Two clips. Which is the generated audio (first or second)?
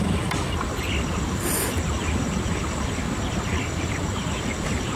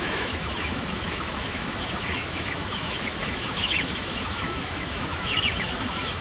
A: second